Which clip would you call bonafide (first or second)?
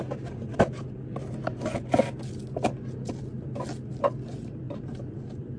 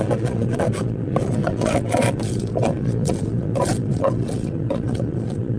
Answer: first